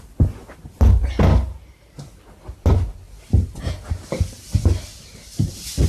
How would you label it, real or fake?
real